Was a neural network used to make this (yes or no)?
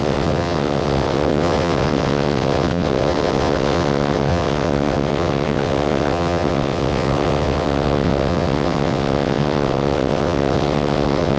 yes